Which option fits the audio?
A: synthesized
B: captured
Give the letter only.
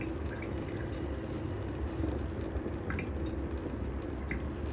B